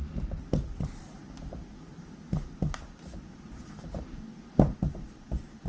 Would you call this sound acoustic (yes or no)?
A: yes